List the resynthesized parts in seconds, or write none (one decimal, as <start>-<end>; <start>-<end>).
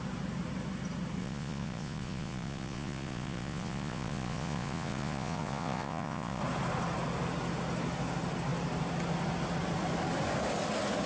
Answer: 1.2-6.4